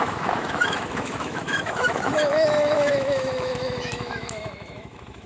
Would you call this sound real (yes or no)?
no